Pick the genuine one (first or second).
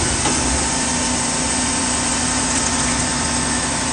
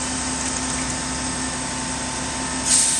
second